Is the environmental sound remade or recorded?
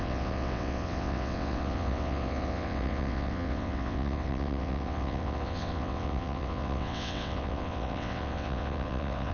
remade